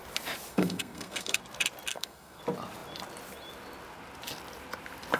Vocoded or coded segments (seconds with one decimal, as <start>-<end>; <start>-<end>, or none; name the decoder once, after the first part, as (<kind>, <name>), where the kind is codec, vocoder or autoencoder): 0.5-1.4 (codec, SNAC); 1.9-2.4